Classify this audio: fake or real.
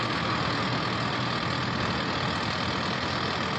real